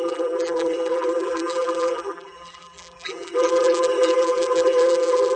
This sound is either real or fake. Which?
fake